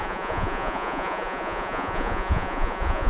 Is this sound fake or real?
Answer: fake